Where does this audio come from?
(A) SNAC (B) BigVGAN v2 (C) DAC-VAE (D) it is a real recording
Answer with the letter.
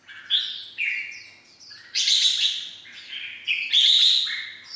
D